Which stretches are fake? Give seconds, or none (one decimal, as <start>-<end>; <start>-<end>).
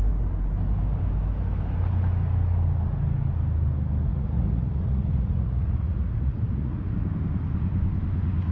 4.1-6.9